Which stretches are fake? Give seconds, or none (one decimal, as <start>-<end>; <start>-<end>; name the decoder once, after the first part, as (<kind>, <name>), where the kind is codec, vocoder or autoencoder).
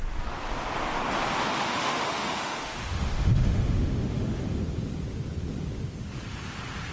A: 1.5-4.6 (autoencoder, DAC-VAE)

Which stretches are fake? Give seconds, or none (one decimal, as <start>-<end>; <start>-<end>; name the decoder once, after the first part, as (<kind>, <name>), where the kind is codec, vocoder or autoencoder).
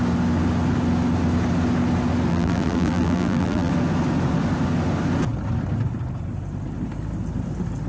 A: 2.3-3.7 (vocoder, BigVGAN v2)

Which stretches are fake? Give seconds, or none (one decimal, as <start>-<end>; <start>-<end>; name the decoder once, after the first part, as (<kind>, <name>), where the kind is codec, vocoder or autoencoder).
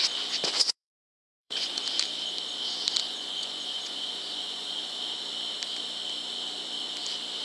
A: 0.5-1.8 (vocoder, Vocos); 3.0-5.0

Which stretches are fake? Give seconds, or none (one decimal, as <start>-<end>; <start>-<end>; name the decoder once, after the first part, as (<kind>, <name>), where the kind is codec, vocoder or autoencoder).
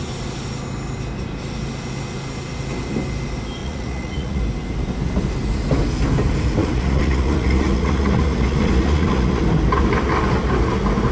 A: 3.6-4.4 (vocoder, Vocos); 6.6-9.4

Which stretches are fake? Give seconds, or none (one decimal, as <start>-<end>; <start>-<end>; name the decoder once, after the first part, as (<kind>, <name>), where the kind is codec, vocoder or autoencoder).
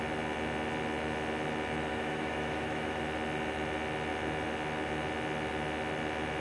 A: 1.9-3.0 (autoencoder, DAC-VAE)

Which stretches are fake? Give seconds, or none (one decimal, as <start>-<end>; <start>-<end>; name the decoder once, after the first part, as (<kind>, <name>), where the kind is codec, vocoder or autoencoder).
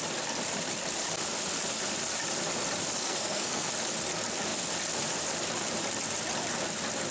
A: 3.0-3.7 (codec, SNAC)